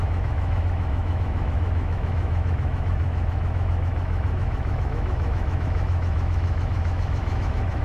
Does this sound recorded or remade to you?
remade